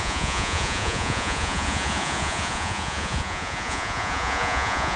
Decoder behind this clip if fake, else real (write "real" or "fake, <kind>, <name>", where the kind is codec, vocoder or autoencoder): fake, vocoder, Vocos